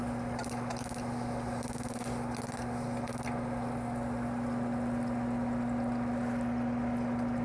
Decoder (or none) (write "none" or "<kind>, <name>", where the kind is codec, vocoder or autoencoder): none